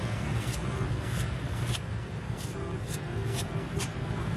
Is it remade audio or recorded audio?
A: remade